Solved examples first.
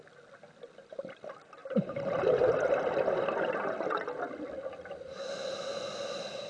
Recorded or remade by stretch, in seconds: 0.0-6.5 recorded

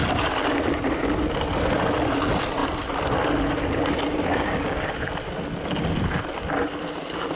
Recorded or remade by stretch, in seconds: 0.0-4.3 recorded; 4.3-4.9 remade; 4.9-7.4 recorded

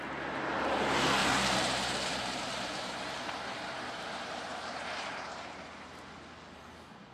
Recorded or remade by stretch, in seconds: 0.0-1.2 recorded; 1.2-5.5 remade; 5.5-7.1 recorded

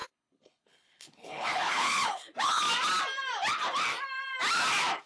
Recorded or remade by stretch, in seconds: 0.0-2.6 remade; 2.6-5.1 recorded

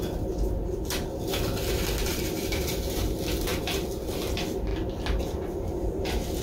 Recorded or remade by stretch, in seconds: 0.0-2.1 recorded; 2.1-3.1 remade; 3.1-6.4 recorded